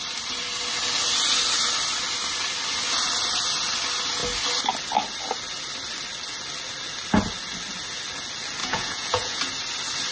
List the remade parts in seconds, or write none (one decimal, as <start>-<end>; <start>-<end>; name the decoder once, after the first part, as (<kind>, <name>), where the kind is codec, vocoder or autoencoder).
8.6-9.4 (vocoder, Vocos)